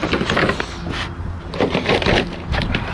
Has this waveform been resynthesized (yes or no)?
no